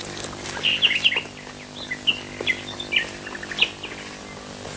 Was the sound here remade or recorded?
recorded